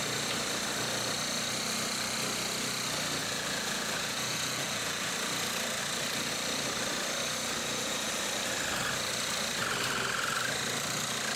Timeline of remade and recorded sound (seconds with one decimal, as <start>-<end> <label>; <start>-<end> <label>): 0.0-3.2 recorded; 3.2-5.1 remade; 5.1-7.6 recorded; 7.6-8.1 remade; 8.1-11.4 recorded